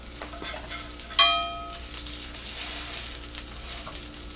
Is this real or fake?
real